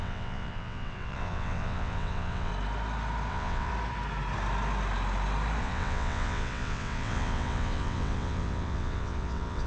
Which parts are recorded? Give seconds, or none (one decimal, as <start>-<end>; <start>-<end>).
2.5-3.3; 3.7-5.6